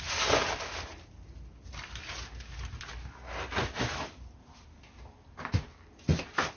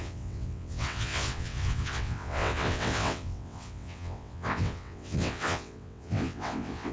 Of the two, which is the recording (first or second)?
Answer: first